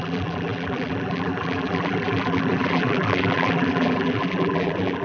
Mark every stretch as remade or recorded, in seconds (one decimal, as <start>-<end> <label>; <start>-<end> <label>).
0.0-5.0 remade